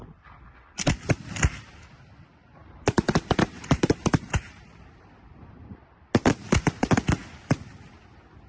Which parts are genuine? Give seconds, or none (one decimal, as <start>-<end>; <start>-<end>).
0.0-2.6; 5.2-8.5